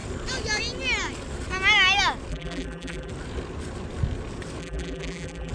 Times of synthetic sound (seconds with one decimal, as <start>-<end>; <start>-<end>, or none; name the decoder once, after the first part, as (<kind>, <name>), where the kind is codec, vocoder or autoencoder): 2.3-3.1 (vocoder, BigVGAN v2); 4.6-5.5